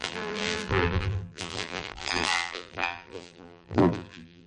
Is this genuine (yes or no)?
no